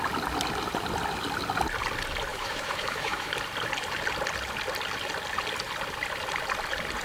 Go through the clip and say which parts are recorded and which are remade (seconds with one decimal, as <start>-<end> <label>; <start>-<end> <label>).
0.0-2.3 recorded; 2.3-3.3 remade; 3.3-7.0 recorded